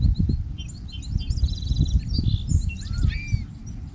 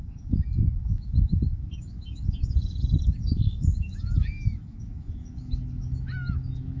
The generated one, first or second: second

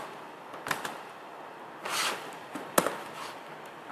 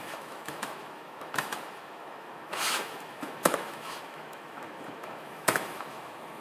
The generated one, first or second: second